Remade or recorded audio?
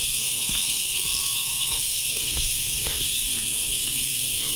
remade